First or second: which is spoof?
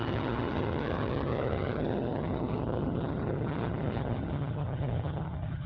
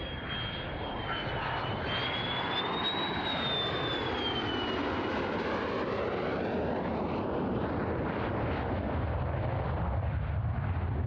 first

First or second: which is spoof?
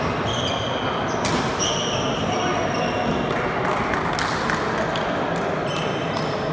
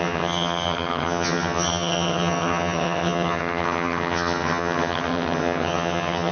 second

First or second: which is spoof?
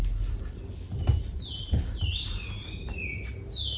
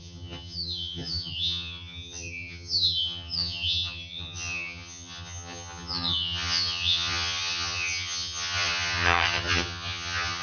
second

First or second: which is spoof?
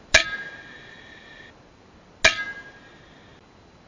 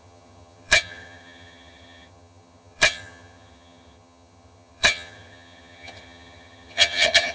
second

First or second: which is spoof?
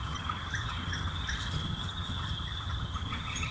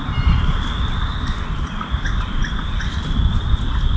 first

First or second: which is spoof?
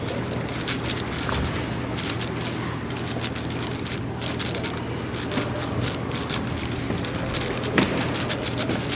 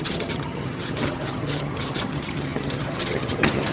second